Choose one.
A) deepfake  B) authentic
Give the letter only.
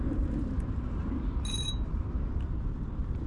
B